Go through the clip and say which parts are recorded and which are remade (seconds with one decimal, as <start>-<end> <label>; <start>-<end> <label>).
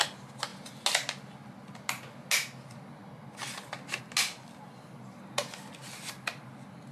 0.0-6.9 recorded